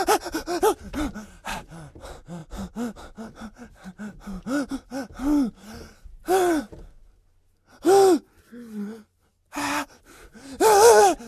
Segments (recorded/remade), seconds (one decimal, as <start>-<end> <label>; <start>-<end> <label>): 0.0-11.3 recorded

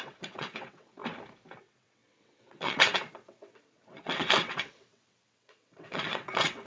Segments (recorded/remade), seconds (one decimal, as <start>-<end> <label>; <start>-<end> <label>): 0.0-1.0 remade; 1.0-1.6 recorded; 1.6-6.7 remade

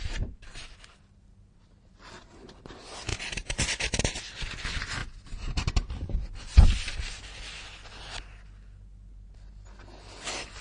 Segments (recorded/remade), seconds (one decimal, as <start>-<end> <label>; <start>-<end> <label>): 0.0-3.1 recorded; 3.1-4.2 remade; 4.2-10.6 recorded